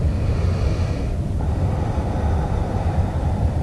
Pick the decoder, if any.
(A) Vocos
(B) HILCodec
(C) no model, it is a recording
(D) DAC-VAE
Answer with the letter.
C